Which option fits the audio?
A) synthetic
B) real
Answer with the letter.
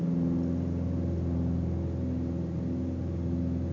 B